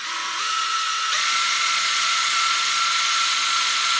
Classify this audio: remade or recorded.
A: remade